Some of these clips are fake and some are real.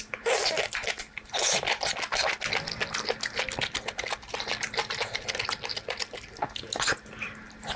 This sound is real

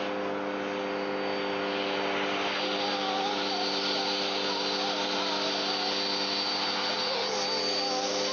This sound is real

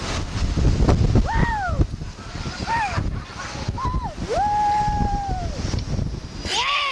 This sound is real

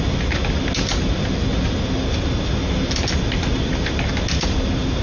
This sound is real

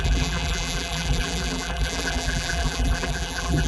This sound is fake